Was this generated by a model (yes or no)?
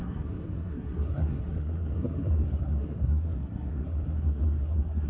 yes